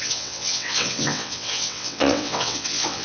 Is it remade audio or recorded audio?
remade